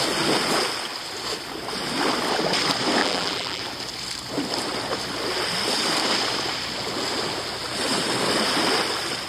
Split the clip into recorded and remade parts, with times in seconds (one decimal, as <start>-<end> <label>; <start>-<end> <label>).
0.0-3.0 recorded; 3.0-3.6 remade; 3.6-9.3 recorded